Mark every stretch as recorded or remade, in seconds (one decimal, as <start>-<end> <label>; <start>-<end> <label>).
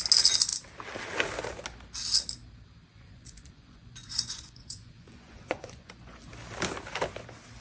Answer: 0.0-2.9 recorded; 2.9-6.2 remade; 6.2-7.6 recorded